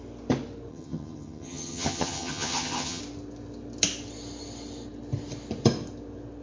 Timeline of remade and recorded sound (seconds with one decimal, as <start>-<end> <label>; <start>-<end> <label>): 0.0-0.7 recorded; 0.7-3.0 remade; 3.0-6.4 recorded